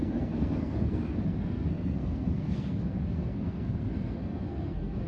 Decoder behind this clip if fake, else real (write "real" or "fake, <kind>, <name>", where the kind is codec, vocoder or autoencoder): fake, codec, SNAC